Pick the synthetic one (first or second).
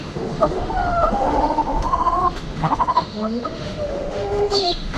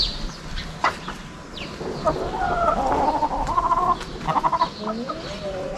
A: first